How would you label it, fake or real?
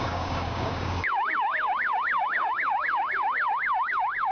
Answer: fake